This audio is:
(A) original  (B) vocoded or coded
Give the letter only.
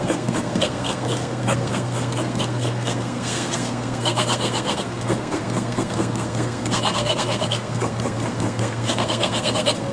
B